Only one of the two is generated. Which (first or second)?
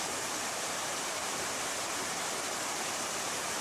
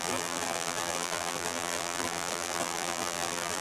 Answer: second